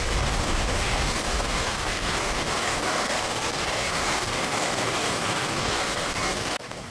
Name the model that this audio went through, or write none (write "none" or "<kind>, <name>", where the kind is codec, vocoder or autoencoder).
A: codec, DAC